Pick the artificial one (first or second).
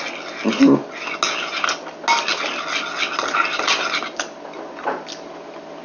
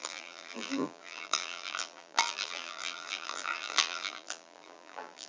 second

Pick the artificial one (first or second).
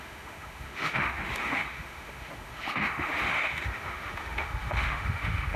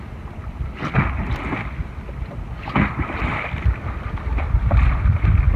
first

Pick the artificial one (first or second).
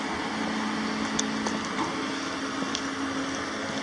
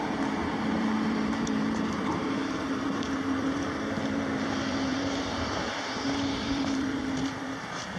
second